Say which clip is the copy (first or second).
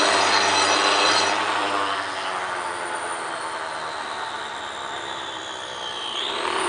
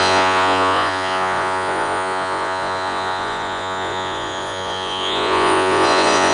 second